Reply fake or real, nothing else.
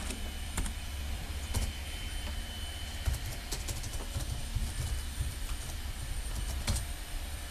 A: fake